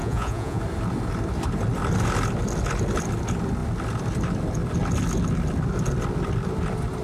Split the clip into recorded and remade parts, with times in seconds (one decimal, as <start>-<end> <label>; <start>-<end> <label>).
0.0-0.6 remade; 0.6-7.0 recorded